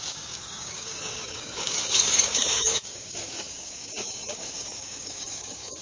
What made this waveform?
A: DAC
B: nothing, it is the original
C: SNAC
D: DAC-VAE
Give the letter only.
A